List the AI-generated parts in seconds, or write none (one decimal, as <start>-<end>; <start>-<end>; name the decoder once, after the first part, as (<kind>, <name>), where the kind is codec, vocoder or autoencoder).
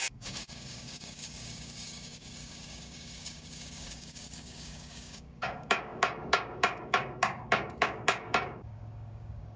0.0-9.6 (codec, DAC)